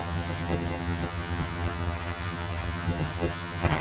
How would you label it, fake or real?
fake